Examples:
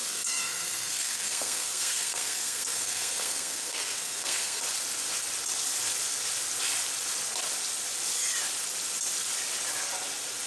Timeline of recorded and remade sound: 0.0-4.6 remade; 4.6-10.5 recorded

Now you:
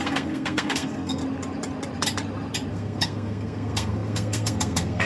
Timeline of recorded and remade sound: 0.0-1.2 remade; 1.2-2.7 recorded; 2.7-5.1 remade

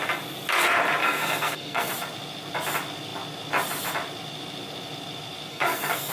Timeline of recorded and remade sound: 0.0-1.0 recorded; 1.0-1.9 remade; 1.9-5.5 recorded; 5.5-6.1 remade

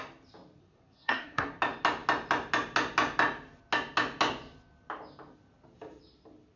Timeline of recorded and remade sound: 0.0-0.6 recorded; 0.6-1.6 remade; 1.6-6.6 recorded

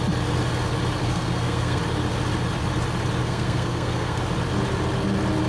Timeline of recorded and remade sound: 0.0-1.0 recorded; 1.0-1.8 remade; 1.8-3.2 recorded; 3.2-4.2 remade; 4.2-5.5 recorded

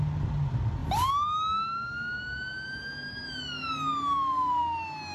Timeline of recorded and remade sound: 0.0-5.1 recorded